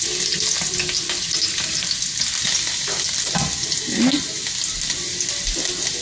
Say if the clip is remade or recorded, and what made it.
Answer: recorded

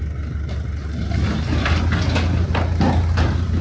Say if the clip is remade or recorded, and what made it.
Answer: recorded